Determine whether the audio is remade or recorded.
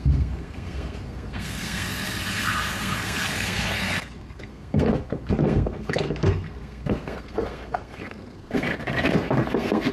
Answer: remade